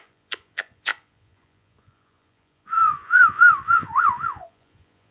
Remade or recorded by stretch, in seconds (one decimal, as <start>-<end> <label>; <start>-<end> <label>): 0.0-5.1 remade